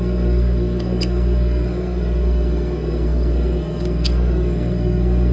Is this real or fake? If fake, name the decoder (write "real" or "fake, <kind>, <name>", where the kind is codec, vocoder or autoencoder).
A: fake, codec, SNAC